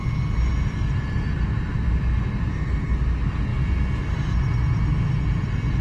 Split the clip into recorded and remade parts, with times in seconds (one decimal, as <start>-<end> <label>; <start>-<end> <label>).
0.0-5.8 recorded